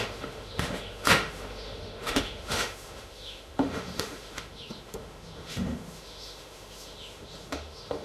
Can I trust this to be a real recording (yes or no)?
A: no